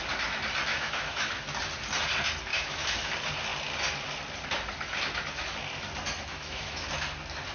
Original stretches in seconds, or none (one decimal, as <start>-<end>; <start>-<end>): 0.0-0.7; 1.3-2.5; 3.1-6.3; 6.9-7.5